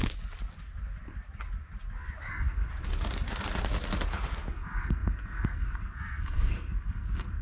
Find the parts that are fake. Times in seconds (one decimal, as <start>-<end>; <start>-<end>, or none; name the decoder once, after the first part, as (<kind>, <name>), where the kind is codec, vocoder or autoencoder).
2.3-2.7 (codec, SNAC); 4.5-7.4